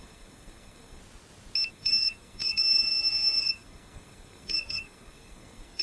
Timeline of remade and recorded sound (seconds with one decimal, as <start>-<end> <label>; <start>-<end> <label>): 0.0-1.0 remade; 1.0-1.7 recorded; 1.7-5.8 remade